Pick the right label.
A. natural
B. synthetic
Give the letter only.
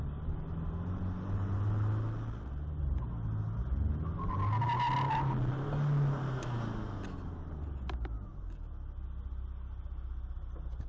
A